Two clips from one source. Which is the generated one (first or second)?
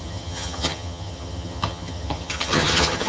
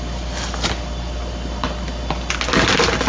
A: first